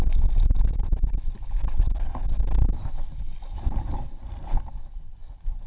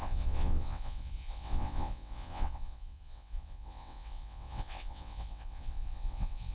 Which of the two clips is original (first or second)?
first